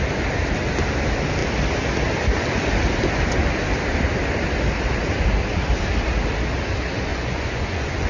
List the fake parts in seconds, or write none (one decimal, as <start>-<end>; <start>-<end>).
7.1-8.1